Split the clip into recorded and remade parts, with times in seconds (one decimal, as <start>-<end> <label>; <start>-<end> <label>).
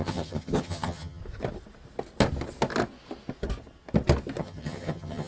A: 0.0-1.2 remade; 1.2-4.4 recorded; 4.4-5.3 remade